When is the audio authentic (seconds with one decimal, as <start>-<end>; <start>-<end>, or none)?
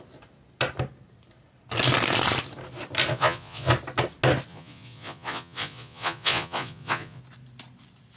0.0-3.1; 3.7-4.5; 7.2-8.2